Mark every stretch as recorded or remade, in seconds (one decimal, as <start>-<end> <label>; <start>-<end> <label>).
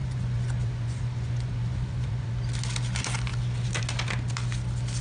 0.0-2.3 remade; 2.3-5.0 recorded